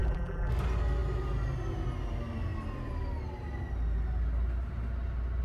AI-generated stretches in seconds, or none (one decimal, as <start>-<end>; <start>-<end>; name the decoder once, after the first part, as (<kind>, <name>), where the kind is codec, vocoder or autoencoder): 0.0-0.5 (vocoder, BigVGAN v2)